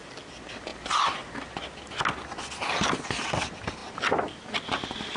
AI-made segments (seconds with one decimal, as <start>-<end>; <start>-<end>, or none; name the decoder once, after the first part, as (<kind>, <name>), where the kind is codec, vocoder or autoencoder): none